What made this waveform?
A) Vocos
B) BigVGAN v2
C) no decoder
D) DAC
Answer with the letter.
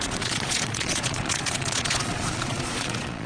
A